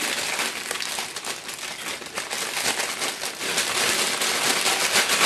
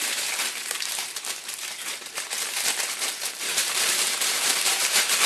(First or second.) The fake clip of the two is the second